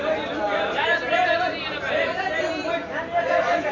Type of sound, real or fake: real